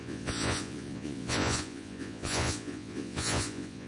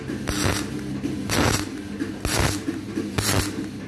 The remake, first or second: first